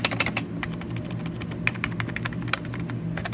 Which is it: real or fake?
real